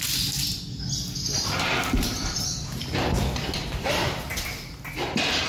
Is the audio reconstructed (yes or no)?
no